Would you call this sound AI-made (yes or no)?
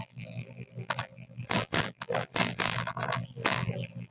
yes